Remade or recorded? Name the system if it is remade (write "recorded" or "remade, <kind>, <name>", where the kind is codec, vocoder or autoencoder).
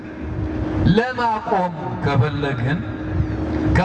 recorded